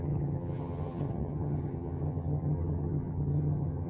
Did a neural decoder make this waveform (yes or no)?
yes